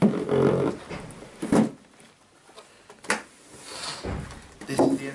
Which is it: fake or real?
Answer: real